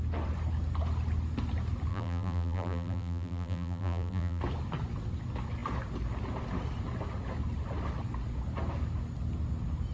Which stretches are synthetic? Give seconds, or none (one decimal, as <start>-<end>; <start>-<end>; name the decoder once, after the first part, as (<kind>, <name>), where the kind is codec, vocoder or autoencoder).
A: 1.9-4.4 (vocoder, BigVGAN v2)